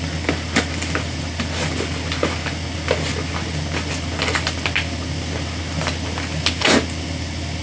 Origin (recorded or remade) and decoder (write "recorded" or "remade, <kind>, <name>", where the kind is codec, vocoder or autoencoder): recorded